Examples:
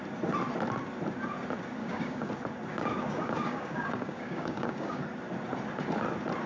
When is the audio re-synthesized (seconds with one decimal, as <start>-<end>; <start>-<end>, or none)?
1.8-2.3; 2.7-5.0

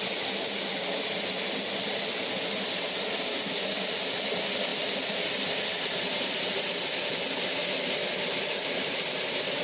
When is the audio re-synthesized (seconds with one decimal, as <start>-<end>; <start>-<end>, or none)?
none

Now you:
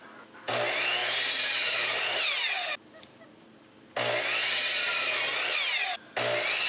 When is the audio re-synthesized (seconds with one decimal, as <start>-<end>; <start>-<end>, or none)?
none